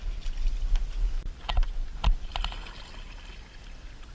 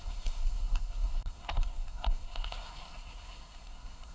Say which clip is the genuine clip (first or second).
first